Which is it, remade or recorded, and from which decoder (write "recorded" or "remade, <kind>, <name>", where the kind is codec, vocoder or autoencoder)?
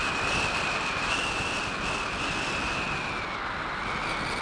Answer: recorded